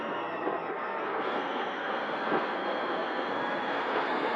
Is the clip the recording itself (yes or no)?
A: no